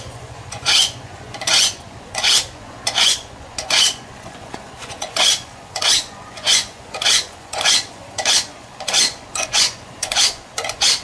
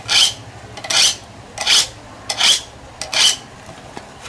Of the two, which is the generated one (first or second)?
first